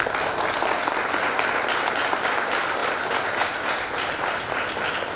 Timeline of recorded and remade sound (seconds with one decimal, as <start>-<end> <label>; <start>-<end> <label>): 0.0-2.8 recorded; 2.8-4.8 remade; 4.8-5.2 recorded